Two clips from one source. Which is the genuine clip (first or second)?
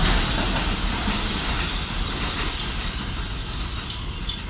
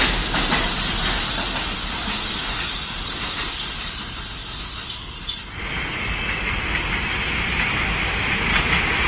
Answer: second